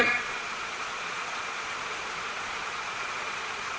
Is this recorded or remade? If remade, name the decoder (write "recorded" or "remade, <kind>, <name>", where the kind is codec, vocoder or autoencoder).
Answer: remade, vocoder, Vocos